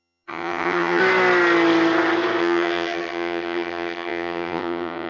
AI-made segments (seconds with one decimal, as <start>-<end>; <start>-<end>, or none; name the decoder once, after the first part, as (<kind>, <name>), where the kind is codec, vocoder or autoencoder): 0.0-1.0 (vocoder, HiFi-GAN); 2.4-5.1